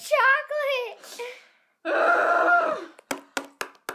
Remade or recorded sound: recorded